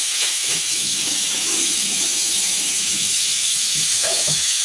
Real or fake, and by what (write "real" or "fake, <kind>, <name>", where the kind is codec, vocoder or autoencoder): fake, autoencoder, DAC-VAE